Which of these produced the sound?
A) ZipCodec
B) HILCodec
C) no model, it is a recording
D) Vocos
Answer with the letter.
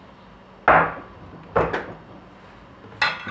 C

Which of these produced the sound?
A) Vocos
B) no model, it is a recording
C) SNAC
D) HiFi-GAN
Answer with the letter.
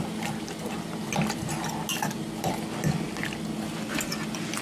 B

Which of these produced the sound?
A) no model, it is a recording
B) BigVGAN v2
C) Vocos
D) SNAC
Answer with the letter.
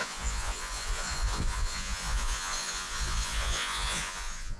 C